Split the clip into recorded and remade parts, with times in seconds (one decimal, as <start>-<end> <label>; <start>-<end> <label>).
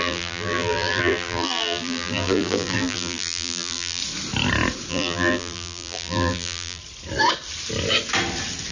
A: 0.0-4.0 remade; 4.0-4.9 recorded; 4.9-6.8 remade; 6.8-8.7 recorded